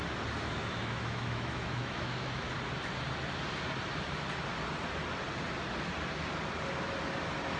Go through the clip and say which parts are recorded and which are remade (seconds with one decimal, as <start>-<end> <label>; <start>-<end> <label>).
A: 0.0-0.6 recorded; 0.6-2.5 remade; 2.5-7.6 recorded